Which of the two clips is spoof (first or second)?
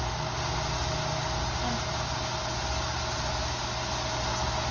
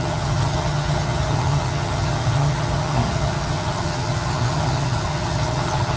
second